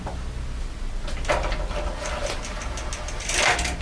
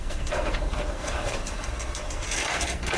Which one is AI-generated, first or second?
second